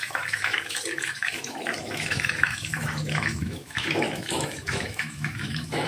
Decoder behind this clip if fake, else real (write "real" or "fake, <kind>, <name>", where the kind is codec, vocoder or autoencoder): fake, autoencoder, DAC-VAE